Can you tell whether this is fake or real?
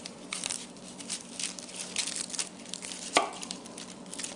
real